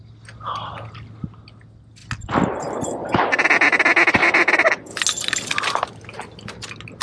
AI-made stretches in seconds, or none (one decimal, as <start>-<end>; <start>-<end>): 4.2-4.7